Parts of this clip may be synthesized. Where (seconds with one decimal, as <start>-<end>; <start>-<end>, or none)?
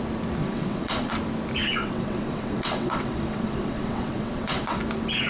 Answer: 0.4-1.1; 1.6-4.8